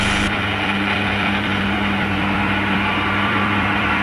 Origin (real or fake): fake